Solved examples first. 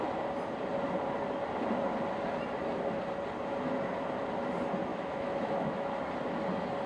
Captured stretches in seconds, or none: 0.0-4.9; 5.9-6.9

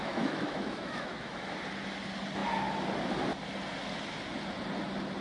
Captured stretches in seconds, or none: 1.5-5.2

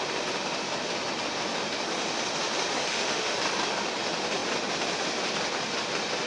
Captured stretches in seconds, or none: 0.0-2.9; 3.4-6.3

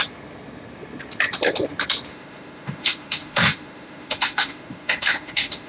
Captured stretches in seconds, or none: 0.0-2.1

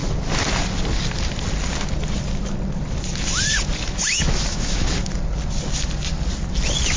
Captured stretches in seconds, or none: 0.0-4.1; 4.9-7.0